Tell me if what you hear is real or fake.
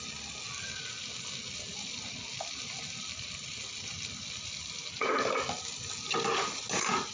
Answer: real